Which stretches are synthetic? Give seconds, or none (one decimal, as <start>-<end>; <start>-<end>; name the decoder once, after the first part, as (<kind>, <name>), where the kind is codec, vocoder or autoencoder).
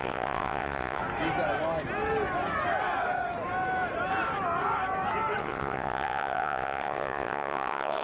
0.0-1.0 (vocoder, WaveNeXt); 5.4-8.0